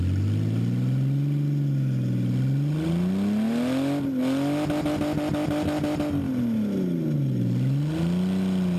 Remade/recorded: recorded